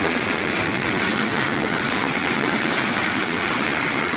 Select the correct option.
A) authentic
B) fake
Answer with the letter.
B